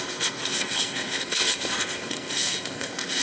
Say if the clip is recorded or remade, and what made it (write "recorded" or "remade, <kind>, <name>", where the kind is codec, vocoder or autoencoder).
remade, codec, SNAC